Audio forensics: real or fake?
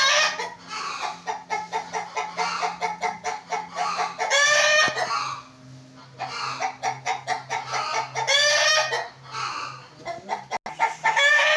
real